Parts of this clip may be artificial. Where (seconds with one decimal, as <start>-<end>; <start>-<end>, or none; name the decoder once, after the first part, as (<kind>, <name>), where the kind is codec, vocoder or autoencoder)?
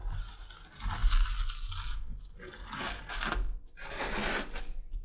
none